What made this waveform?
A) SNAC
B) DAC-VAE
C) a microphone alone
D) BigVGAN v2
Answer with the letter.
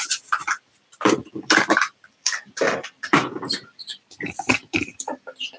D